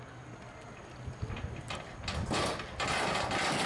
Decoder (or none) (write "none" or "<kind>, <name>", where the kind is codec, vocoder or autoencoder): none